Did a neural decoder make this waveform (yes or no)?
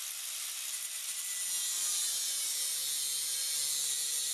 no